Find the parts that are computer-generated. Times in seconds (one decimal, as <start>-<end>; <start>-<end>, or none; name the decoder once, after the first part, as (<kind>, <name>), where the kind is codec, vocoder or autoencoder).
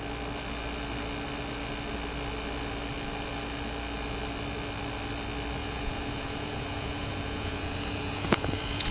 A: 5.6-8.9 (vocoder, Vocos)